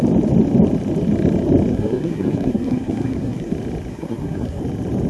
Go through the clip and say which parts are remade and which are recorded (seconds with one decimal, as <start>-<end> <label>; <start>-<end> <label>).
0.0-1.7 recorded; 1.7-3.5 remade; 3.5-3.9 recorded; 3.9-4.6 remade; 4.6-5.1 recorded